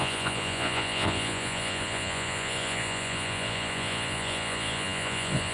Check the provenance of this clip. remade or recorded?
remade